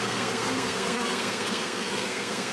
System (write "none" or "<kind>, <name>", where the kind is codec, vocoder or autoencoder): codec, SNAC